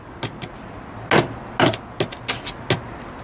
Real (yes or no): yes